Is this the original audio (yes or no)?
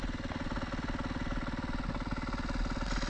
yes